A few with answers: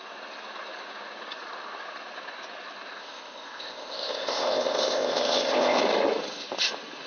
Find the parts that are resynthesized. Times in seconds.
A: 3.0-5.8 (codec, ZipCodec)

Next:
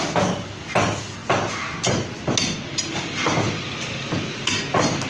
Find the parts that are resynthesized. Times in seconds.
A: none

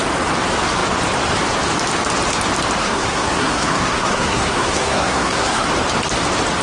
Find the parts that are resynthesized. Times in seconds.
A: 2.8-5.7 (codec, SNAC)

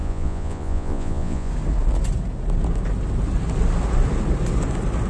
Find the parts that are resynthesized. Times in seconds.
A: 0.0-1.5 (vocoder, Vocos)